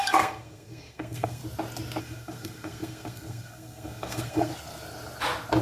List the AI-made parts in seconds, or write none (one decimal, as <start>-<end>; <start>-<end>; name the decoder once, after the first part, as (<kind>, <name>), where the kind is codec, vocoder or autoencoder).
0.0-1.4 (codec, SNAC); 2.0-4.5